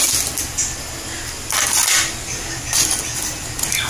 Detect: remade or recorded recorded